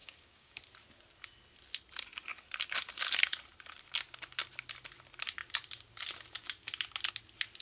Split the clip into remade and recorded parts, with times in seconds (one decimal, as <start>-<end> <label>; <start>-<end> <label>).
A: 0.0-0.6 remade; 0.6-7.6 recorded